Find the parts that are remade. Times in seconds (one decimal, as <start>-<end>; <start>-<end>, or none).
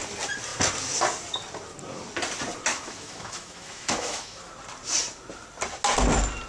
2.7-4.5